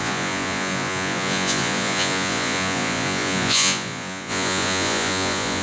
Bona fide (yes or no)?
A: no